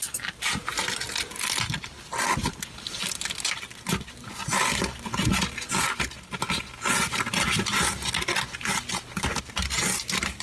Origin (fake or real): real